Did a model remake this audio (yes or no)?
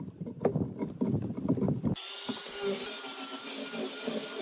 no